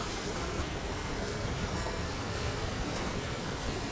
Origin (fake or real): fake